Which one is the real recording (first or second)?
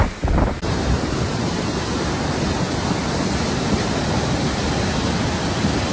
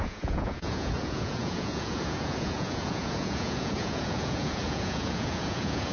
first